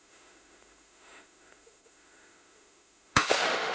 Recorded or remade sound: remade